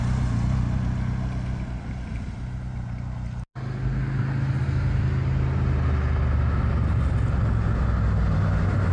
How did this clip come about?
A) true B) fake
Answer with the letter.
A